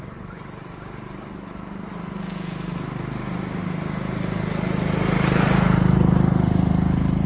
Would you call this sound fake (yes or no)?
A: no